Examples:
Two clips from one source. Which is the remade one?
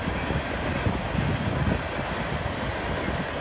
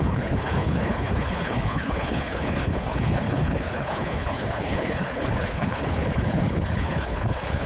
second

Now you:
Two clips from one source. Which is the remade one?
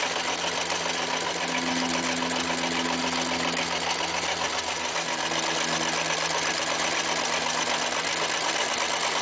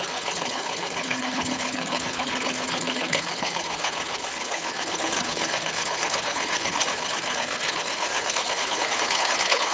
second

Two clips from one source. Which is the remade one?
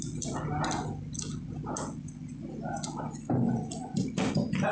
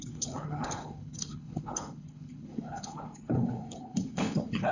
second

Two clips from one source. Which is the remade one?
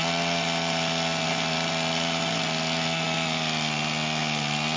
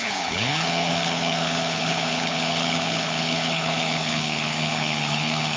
second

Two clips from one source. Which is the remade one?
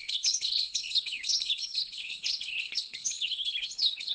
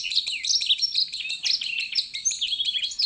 first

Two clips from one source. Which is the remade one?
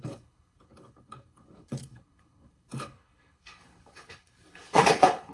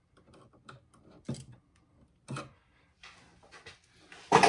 first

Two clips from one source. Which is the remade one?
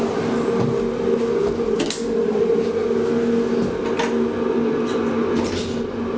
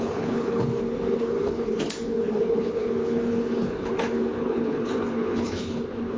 second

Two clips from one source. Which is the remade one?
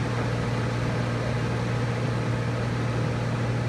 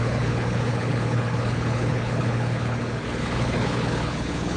second